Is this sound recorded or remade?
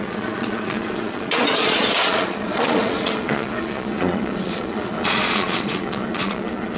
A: remade